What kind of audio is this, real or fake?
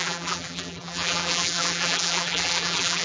fake